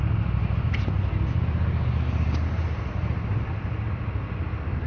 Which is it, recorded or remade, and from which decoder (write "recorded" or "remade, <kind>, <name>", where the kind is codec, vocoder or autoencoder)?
recorded